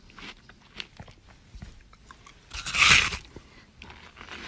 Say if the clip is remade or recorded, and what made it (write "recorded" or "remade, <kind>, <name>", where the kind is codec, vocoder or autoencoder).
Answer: recorded